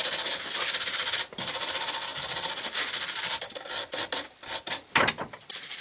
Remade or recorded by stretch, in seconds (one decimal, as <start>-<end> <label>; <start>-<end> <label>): 0.0-5.8 recorded